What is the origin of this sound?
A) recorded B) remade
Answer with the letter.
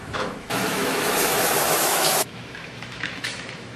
B